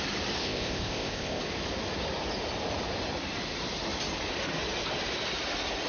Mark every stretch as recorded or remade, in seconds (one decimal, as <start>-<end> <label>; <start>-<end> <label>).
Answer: 0.0-0.4 recorded; 0.4-1.4 remade; 1.4-5.9 recorded